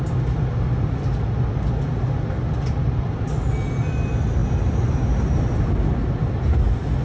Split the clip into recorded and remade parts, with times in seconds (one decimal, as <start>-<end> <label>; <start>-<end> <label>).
0.0-7.0 recorded